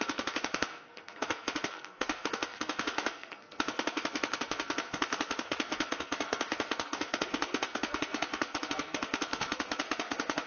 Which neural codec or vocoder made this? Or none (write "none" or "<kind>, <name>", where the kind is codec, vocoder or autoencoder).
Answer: codec, SNAC